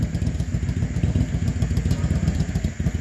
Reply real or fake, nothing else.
real